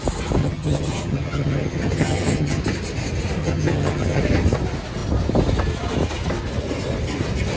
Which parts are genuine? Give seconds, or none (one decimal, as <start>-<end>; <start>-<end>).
0.0-0.4; 2.6-3.4; 4.2-7.6